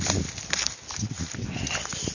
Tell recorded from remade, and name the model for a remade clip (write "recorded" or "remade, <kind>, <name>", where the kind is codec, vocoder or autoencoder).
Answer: recorded